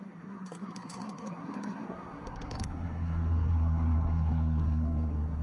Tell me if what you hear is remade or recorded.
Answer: remade